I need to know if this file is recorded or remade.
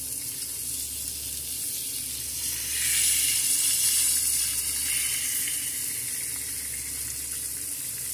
recorded